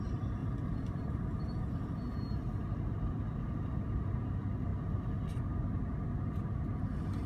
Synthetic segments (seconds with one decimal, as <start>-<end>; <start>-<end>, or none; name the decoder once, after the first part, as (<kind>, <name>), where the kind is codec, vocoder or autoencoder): 0.4-1.9 (vocoder, BigVGAN v2)